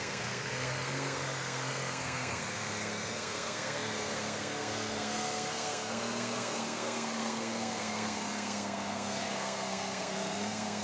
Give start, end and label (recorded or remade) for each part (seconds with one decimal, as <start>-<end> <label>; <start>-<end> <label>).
0.0-10.8 remade